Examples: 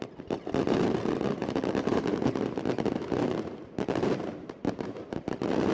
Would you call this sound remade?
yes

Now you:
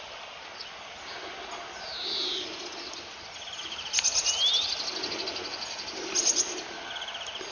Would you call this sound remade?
no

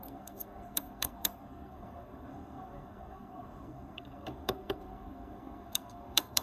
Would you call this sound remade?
yes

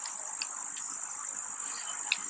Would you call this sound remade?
no